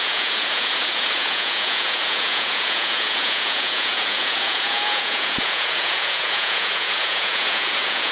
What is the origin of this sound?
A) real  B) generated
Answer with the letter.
B